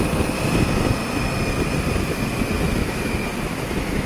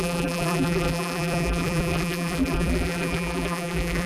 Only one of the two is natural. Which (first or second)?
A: first